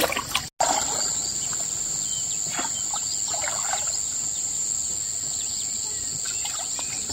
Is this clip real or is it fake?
real